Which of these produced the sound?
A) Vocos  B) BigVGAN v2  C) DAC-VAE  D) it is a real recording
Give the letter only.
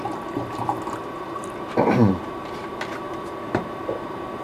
B